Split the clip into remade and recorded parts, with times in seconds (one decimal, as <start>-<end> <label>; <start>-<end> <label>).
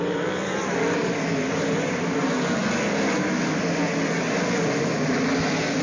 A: 0.0-2.2 remade; 2.2-5.8 recorded